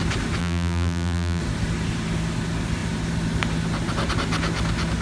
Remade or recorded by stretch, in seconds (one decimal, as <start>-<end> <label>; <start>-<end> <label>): 0.0-0.4 recorded; 0.4-1.4 remade; 1.4-5.0 recorded